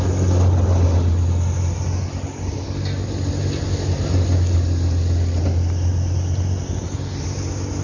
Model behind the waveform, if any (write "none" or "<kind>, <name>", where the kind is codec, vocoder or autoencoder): none